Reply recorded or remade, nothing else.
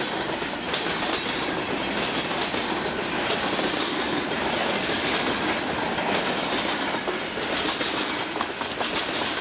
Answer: recorded